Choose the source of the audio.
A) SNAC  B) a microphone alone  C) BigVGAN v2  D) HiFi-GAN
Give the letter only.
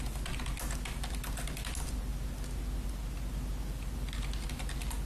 B